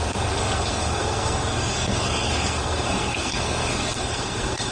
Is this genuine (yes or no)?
no